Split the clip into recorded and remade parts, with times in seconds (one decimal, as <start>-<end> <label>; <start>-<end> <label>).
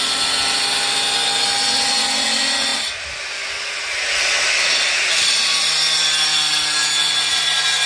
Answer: 0.0-7.9 recorded